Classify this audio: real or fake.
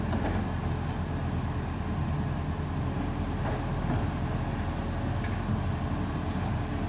real